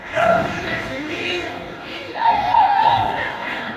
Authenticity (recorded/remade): remade